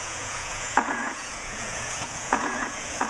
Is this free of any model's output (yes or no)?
no